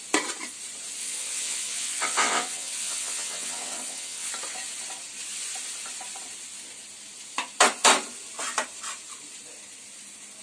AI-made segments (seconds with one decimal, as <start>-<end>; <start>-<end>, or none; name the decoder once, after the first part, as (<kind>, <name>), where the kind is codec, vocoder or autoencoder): 1.0-4.3 (vocoder, WaveNeXt)